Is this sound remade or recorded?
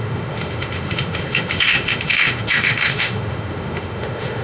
remade